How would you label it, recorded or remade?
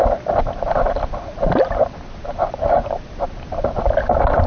recorded